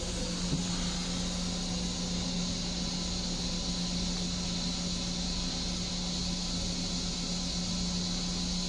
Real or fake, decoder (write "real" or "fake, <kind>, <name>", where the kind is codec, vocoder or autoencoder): real